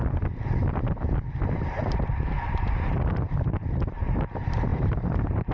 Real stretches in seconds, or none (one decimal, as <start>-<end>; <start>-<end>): 0.0-4.7